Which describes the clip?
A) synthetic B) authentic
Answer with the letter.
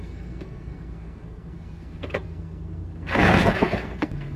A